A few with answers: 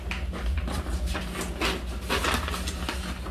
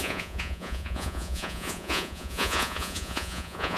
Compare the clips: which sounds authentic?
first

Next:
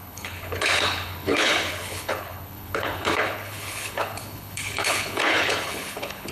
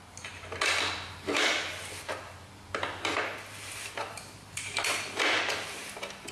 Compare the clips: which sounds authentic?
second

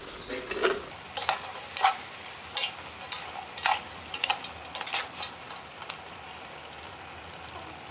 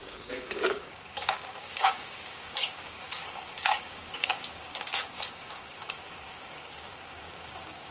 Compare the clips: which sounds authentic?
first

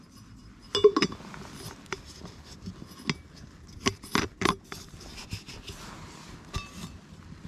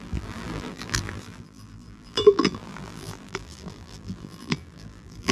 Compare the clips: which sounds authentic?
first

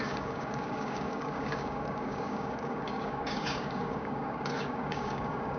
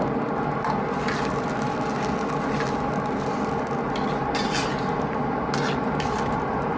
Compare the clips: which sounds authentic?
second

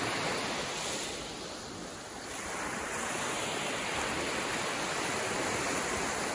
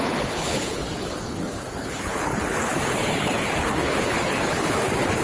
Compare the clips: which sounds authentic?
first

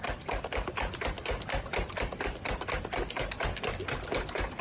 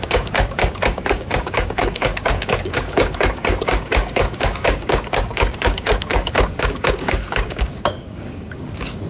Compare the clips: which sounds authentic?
first